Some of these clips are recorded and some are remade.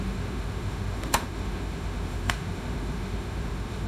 remade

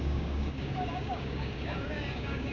remade